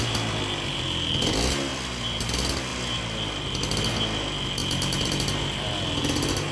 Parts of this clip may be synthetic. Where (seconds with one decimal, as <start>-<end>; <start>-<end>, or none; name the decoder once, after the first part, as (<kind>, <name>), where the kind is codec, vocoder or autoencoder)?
1.7-2.3 (vocoder, BigVGAN v2); 4.6-5.9